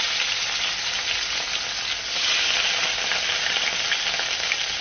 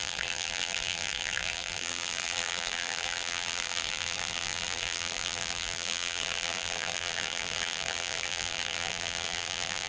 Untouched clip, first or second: first